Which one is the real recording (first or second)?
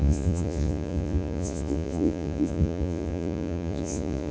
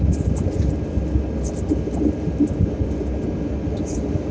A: second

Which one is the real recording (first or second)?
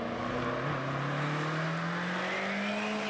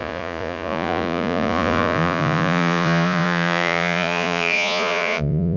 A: first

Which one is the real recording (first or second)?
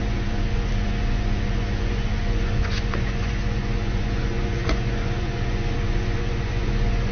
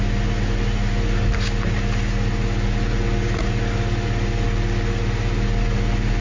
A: second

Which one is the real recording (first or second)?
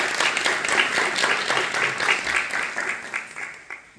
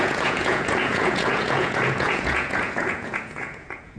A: first